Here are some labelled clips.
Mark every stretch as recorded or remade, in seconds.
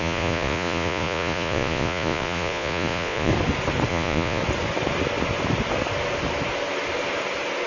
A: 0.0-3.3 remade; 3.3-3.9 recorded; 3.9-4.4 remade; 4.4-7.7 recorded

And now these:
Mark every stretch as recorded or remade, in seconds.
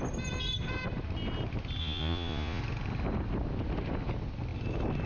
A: 0.0-1.8 recorded; 1.8-2.6 remade; 2.6-5.1 recorded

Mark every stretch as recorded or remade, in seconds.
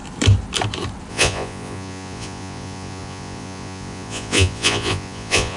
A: 0.0-1.1 recorded; 1.1-5.6 remade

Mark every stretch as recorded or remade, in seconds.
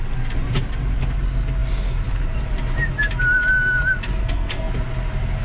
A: 0.0-4.2 recorded; 4.2-4.7 remade; 4.7-5.4 recorded